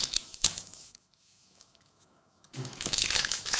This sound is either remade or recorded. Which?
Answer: remade